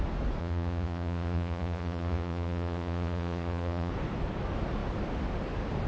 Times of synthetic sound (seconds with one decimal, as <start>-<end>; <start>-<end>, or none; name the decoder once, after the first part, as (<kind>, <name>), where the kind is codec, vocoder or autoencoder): 0.4-3.9 (vocoder, Vocos)